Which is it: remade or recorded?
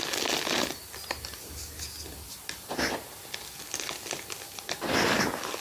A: recorded